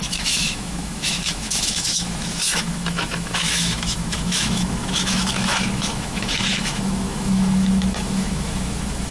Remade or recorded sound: remade